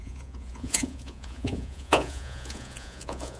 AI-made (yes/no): yes